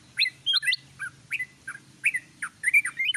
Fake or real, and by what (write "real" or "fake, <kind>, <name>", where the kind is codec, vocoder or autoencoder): real